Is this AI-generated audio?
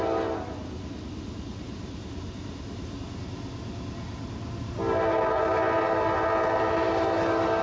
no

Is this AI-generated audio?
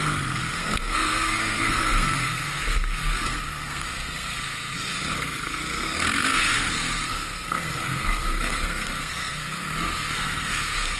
yes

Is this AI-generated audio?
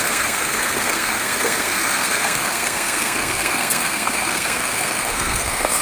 yes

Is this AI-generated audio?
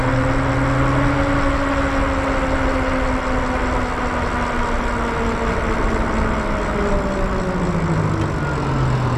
no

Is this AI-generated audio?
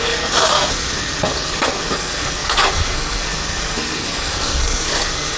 yes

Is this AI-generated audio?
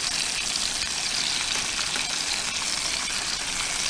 no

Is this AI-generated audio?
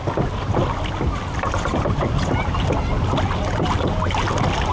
no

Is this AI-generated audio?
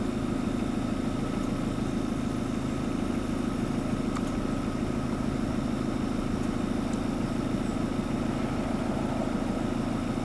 no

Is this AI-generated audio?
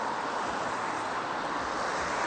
no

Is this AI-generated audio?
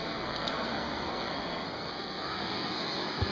yes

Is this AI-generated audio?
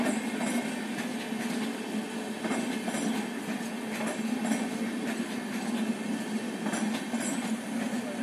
no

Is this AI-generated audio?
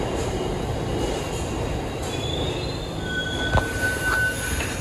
no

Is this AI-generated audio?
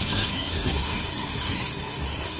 yes